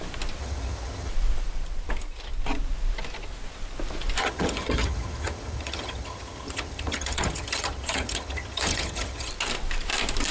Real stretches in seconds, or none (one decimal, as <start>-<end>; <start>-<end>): 0.0-0.4; 1.1-4.2; 9.3-10.3